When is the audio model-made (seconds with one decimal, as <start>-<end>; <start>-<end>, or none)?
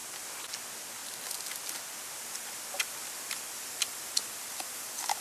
none